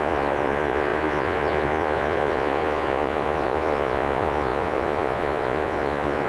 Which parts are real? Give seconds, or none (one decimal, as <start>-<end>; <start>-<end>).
none